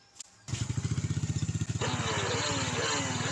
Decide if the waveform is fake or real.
real